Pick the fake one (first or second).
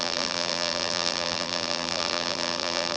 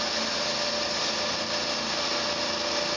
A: first